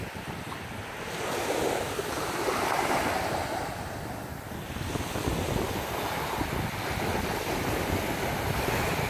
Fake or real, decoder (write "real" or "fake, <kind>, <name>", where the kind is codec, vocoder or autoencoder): real